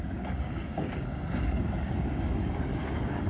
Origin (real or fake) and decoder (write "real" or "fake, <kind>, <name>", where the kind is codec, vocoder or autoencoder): fake, codec, DAC